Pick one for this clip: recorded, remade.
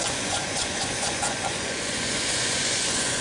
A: remade